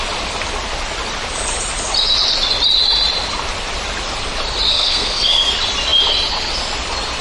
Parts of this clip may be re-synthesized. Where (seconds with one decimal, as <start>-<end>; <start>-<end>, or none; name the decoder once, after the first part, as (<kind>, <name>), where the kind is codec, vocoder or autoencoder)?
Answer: 4.7-5.5 (codec, SNAC)